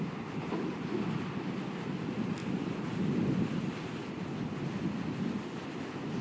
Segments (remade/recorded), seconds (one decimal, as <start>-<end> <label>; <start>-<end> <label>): 0.0-6.2 recorded